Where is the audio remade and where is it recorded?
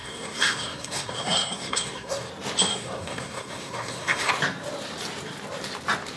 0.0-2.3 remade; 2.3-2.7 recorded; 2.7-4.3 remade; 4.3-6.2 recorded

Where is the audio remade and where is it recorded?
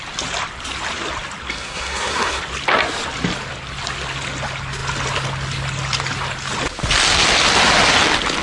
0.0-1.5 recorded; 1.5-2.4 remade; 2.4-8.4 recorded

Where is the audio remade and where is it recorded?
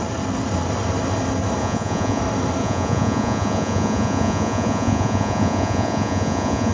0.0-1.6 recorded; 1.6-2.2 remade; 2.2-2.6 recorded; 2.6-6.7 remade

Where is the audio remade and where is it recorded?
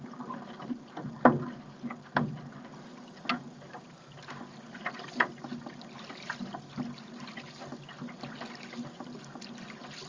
0.0-10.1 recorded